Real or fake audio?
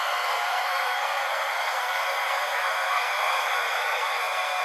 fake